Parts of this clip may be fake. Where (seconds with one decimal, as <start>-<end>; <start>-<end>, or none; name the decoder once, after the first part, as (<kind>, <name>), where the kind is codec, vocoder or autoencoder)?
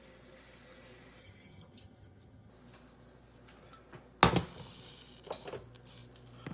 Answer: 1.2-2.5 (vocoder, HiFi-GAN)